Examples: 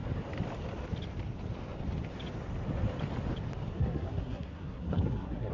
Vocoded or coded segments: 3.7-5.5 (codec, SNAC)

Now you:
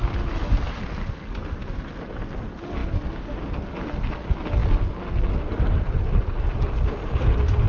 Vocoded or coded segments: none

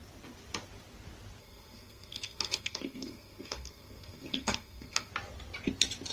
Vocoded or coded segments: 1.4-5.1 (codec, SNAC)

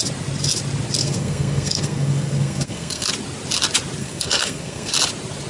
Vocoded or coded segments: 1.0-3.1 (codec, SNAC); 4.0-4.9

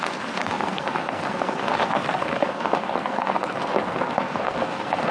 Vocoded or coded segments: 0.0-5.1 (codec, SNAC)

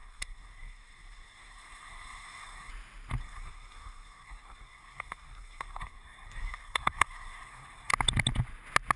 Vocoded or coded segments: 0.0-2.7 (codec, SNAC); 3.2-7.9

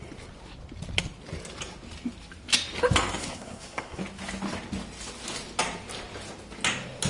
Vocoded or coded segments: 3.2-4.0 (codec, SNAC)

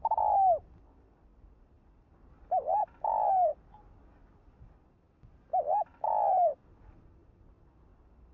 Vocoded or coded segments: none